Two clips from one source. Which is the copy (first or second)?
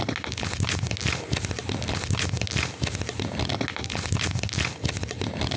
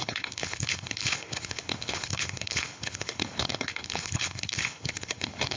second